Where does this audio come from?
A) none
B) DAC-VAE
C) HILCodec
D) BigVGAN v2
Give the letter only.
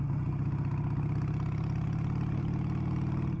A